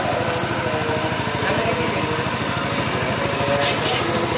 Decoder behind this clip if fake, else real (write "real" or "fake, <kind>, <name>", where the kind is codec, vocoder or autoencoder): real